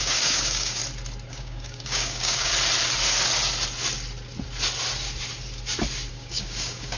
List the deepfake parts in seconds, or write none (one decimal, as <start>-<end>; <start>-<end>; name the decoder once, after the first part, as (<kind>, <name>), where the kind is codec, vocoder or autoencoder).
0.0-0.8 (codec, DAC); 1.3-2.5; 6.1-7.0